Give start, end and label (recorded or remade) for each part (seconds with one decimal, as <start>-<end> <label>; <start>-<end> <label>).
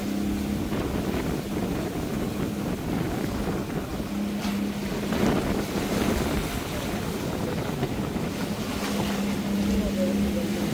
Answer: 0.0-10.7 recorded